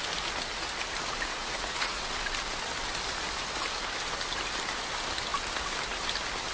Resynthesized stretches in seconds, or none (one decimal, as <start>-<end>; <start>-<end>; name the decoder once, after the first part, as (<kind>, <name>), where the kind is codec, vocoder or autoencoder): 1.4-2.0 (vocoder, Vocos)